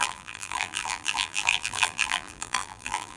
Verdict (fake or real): fake